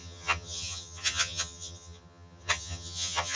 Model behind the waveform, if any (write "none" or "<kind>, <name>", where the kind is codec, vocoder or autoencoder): vocoder, HiFi-GAN